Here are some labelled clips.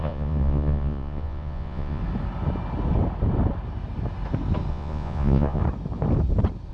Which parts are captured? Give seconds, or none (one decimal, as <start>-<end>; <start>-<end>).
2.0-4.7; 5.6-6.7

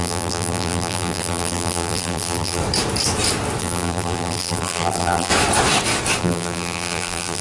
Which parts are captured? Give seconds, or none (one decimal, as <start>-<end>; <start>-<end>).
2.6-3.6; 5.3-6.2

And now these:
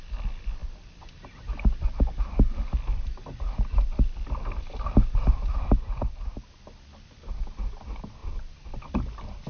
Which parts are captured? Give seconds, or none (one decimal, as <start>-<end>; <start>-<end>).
0.0-9.5

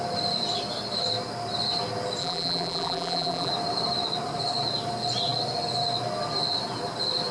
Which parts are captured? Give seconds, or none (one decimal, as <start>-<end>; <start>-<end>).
0.0-2.2; 3.5-7.3

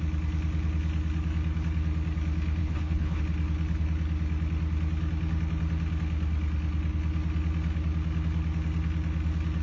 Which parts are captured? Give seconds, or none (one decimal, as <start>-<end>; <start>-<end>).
0.0-2.6; 3.2-9.6

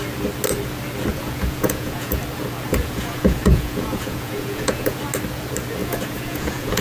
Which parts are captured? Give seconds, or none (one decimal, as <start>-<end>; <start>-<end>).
0.0-1.1; 2.2-2.7; 5.0-5.8

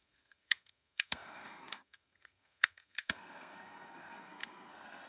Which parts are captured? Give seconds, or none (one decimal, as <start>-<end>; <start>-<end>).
none

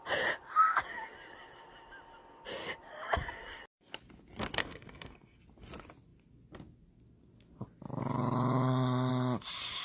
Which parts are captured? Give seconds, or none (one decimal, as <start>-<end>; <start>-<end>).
0.0-4.6; 5.4-9.8